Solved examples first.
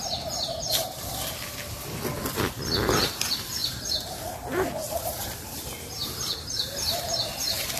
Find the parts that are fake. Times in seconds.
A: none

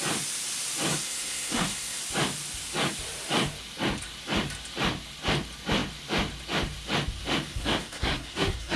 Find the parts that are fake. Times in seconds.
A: 0.9-2.0 (codec, SNAC); 7.5-8.8

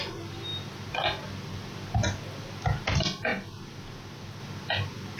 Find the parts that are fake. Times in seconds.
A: none